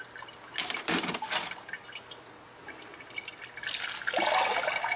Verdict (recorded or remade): recorded